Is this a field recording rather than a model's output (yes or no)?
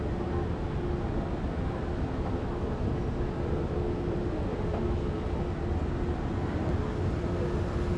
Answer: yes